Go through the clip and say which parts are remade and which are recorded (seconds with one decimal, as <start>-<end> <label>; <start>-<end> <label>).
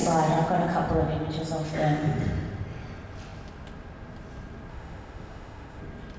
0.0-4.7 recorded; 4.7-5.8 remade; 5.8-6.2 recorded